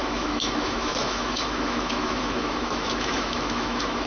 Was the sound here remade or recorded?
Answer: remade